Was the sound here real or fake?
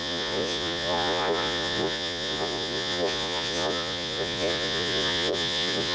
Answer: fake